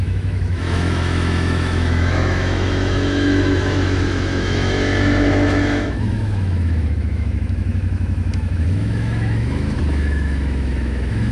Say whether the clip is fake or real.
fake